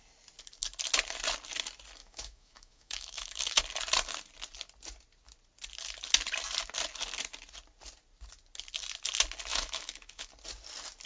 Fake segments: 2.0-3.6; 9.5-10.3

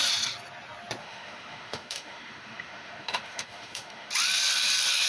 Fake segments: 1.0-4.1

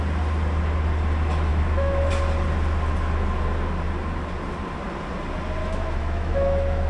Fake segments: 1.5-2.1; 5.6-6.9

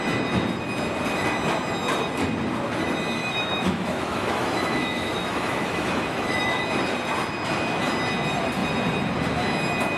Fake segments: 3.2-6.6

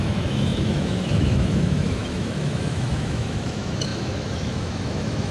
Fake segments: 0.0-5.3